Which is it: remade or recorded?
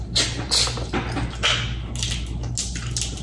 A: recorded